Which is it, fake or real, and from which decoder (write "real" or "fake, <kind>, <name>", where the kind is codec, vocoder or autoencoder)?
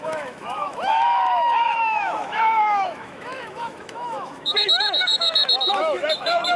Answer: fake, autoencoder, DAC-VAE